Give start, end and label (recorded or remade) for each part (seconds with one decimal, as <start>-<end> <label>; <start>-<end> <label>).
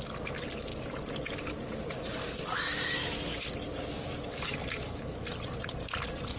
0.0-6.4 recorded